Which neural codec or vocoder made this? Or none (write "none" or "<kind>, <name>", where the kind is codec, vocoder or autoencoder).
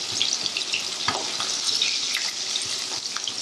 none